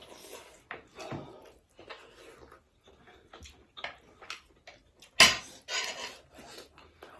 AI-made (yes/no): no